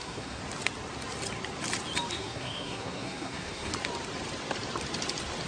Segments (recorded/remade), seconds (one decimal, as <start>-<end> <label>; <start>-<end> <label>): 0.0-0.4 remade; 0.4-2.1 recorded; 2.1-3.7 remade; 3.7-5.5 recorded